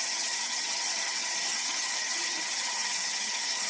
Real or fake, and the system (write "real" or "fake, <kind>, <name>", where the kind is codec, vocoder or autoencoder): fake, vocoder, HiFi-GAN